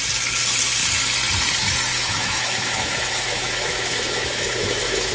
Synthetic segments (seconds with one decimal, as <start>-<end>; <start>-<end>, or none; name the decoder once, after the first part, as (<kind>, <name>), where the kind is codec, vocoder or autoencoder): 1.9-5.1 (autoencoder, DAC-VAE)